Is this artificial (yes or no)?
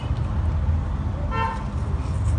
no